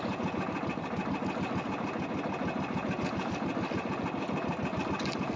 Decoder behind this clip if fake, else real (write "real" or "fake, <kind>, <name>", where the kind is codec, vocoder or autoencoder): real